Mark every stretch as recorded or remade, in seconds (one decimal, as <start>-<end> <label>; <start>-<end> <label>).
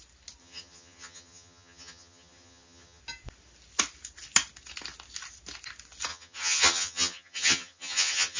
0.0-0.4 recorded; 0.4-3.0 remade; 3.0-6.1 recorded; 6.1-8.4 remade